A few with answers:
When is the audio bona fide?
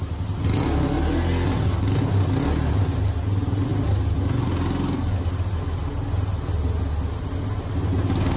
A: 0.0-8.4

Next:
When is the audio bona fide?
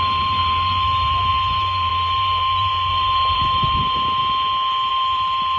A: 4.2-4.9